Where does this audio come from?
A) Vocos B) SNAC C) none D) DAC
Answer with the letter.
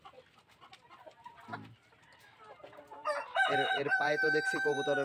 C